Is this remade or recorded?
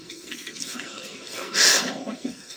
remade